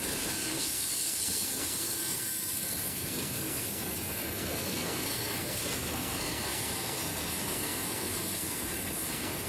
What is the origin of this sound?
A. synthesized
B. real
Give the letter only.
A